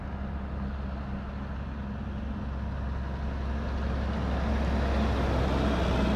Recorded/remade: recorded